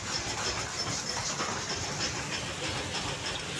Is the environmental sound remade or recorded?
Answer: recorded